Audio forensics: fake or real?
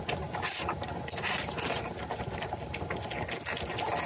real